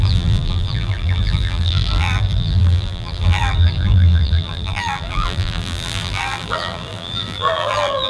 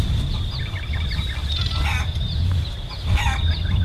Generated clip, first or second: first